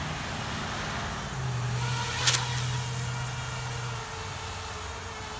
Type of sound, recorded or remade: recorded